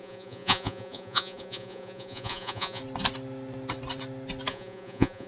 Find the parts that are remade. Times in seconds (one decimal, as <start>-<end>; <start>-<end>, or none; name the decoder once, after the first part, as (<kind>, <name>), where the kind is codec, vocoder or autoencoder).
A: 0.0-2.8 (vocoder, Vocos); 4.5-5.3